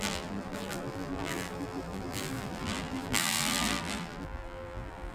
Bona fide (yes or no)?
no